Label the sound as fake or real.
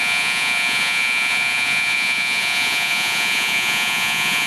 fake